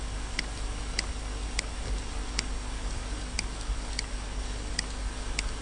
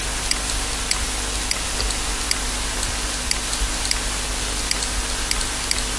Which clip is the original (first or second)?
second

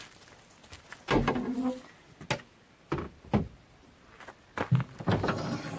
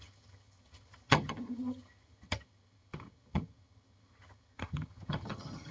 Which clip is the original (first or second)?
first